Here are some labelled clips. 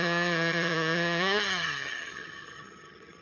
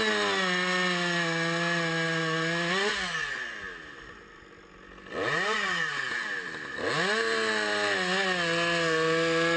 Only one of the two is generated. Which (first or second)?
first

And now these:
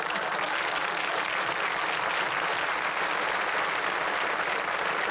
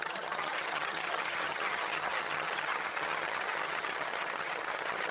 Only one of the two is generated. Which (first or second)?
second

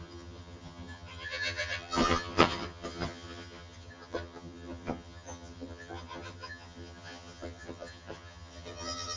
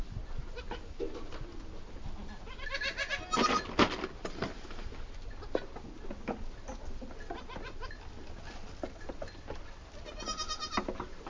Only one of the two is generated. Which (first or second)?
first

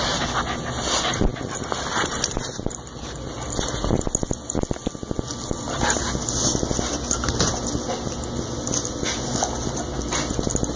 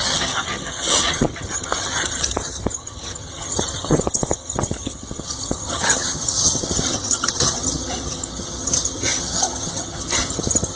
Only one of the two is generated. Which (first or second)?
second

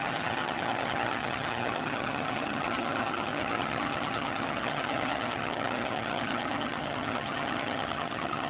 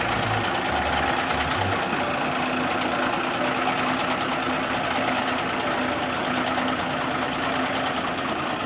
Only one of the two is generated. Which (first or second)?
first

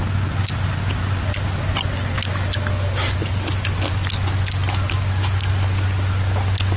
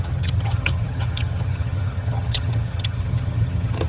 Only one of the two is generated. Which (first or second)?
second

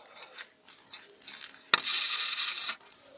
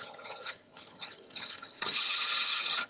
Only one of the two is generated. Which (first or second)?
second